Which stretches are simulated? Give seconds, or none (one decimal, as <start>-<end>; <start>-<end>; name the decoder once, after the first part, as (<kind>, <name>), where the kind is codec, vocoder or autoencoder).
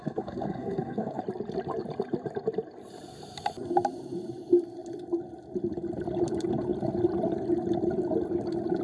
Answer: 0.0-1.2 (codec, SNAC)